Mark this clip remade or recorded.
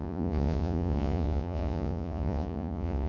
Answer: remade